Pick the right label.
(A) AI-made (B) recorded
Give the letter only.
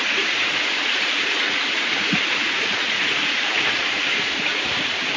A